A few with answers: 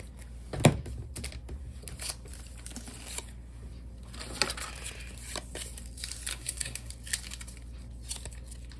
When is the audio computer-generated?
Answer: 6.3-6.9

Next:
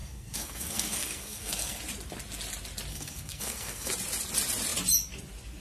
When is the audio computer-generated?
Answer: 0.0-1.8; 2.9-3.9